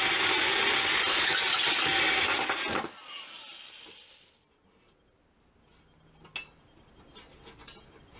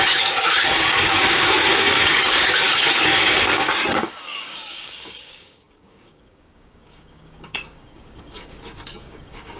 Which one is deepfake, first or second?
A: second